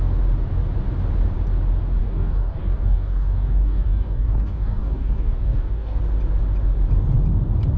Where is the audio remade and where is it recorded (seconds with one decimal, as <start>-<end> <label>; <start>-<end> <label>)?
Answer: 0.0-2.0 recorded; 2.0-6.0 remade; 6.0-7.8 recorded